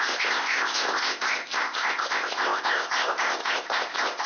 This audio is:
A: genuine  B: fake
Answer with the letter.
B